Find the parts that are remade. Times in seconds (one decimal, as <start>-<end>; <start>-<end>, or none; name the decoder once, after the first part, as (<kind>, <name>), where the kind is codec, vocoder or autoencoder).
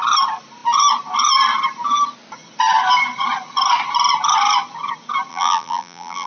5.3-6.3 (vocoder, BigVGAN v2)